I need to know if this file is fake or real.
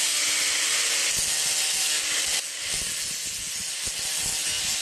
real